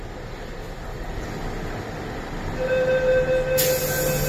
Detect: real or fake real